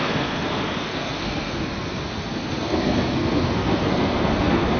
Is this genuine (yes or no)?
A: no